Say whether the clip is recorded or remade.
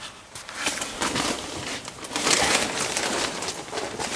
remade